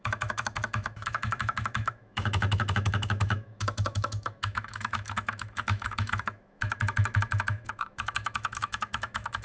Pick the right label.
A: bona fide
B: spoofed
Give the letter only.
B